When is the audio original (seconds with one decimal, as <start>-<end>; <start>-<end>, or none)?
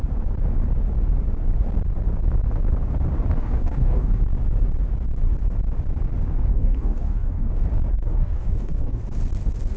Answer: 0.0-3.4; 4.2-6.5; 7.5-7.9; 9.0-9.8